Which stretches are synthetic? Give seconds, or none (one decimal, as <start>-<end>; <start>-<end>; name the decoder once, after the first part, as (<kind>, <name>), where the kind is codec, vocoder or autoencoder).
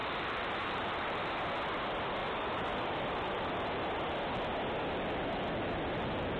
0.0-1.2 (vocoder, BigVGAN v2); 2.2-3.4